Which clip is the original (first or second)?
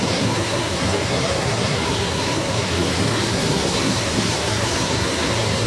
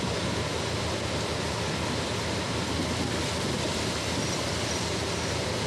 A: second